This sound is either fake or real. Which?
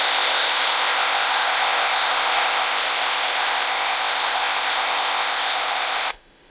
fake